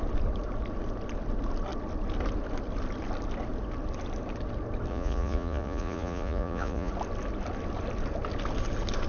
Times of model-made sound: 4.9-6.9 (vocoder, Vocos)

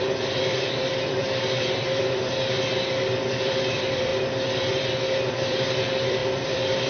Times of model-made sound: 0.0-4.1 (vocoder, BigVGAN v2); 5.3-6.9

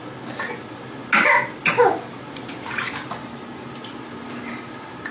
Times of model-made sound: none

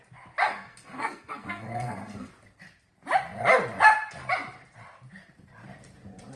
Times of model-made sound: 0.4-2.3 (codec, SNAC)

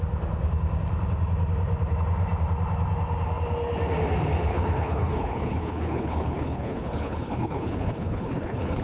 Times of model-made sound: 4.5-8.8 (codec, HILCodec)

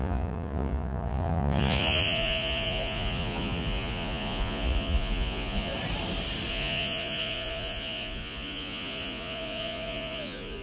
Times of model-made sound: 0.0-5.7 (vocoder, Vocos); 6.5-10.6